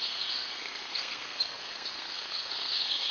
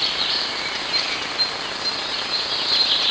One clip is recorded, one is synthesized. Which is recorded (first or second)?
second